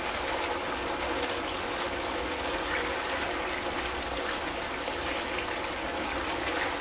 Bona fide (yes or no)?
yes